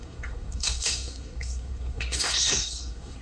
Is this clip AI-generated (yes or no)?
yes